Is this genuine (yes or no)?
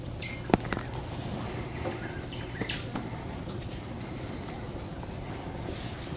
yes